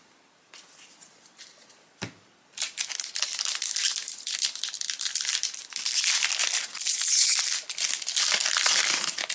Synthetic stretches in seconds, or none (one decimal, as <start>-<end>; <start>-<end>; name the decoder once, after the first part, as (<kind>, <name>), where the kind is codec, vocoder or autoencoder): none